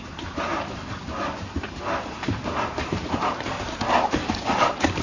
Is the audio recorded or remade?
remade